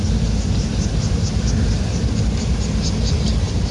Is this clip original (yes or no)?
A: yes